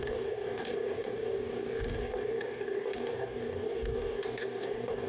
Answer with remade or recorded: remade